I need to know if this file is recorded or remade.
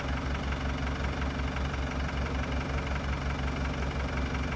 recorded